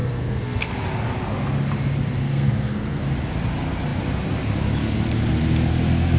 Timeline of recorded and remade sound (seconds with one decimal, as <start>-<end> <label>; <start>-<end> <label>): 0.0-0.7 remade; 0.7-2.2 recorded; 2.2-3.0 remade; 3.0-6.2 recorded